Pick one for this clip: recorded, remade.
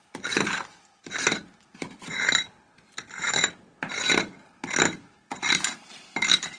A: recorded